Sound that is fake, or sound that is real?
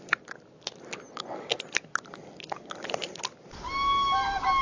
real